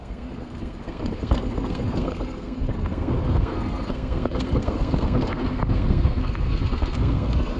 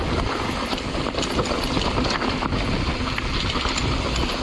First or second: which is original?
second